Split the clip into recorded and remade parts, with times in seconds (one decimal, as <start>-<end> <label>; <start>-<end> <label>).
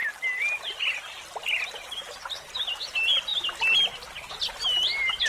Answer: 0.0-5.3 recorded